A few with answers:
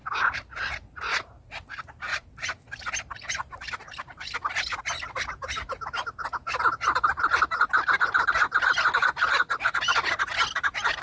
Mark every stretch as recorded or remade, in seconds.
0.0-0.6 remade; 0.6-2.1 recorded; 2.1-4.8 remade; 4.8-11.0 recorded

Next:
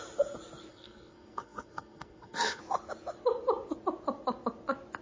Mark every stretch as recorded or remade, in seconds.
0.0-0.7 recorded; 0.7-2.6 remade; 2.6-5.0 recorded

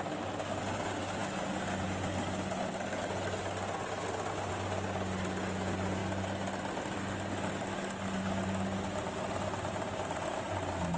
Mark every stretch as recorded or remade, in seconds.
0.0-11.0 recorded

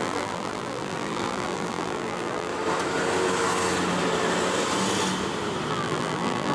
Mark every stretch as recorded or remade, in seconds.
0.0-2.5 remade; 2.5-5.7 recorded; 5.7-6.5 remade

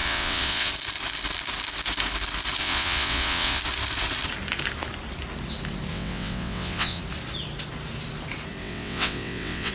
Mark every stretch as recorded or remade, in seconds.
0.0-0.7 remade; 0.7-2.6 recorded; 2.6-3.6 remade; 3.6-5.9 recorded; 5.9-7.0 remade; 7.0-8.6 recorded; 8.6-9.7 remade